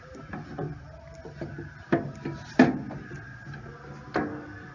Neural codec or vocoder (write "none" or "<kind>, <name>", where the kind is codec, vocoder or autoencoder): none